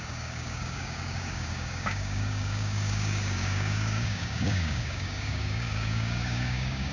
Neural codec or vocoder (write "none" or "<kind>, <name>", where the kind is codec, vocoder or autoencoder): codec, DAC